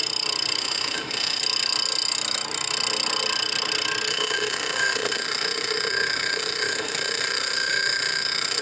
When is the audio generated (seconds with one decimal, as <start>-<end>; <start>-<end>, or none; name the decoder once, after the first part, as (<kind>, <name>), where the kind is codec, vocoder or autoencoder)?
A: 0.6-1.4 (autoencoder, DAC-VAE); 4.1-8.6